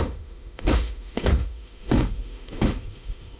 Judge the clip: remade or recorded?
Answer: remade